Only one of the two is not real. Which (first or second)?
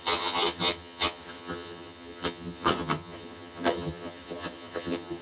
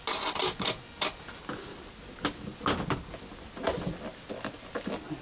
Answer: first